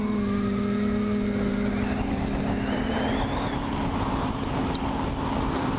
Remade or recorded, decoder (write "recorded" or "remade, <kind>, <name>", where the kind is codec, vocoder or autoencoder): recorded